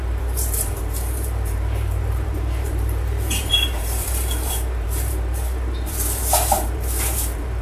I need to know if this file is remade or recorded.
remade